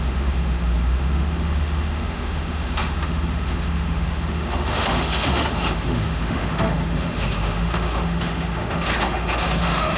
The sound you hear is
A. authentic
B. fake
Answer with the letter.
B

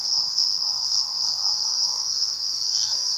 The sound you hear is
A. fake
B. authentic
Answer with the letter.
A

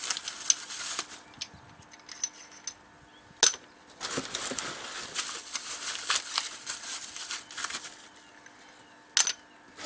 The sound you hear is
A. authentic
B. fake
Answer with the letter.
A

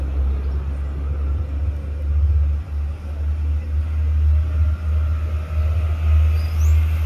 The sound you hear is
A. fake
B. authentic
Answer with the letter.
B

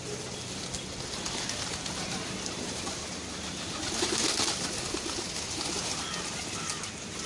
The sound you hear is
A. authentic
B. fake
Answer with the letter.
A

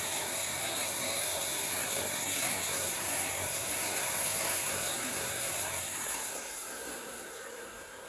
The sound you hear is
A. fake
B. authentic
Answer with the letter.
A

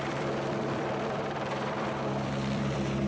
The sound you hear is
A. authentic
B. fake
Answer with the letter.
B